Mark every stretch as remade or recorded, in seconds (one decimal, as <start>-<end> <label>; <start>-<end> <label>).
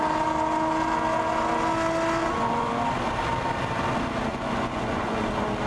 0.0-2.2 recorded; 2.2-2.7 remade; 2.7-4.3 recorded; 4.3-5.3 remade; 5.3-5.7 recorded